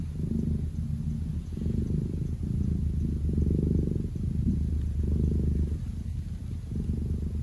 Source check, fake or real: real